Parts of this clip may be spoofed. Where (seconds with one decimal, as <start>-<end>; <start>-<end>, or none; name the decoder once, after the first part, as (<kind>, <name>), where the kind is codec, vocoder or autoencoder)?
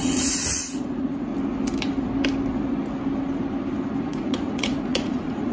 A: 0.0-1.3 (vocoder, Vocos); 4.0-5.5